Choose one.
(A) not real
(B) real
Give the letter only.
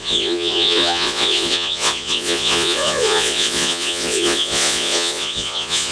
A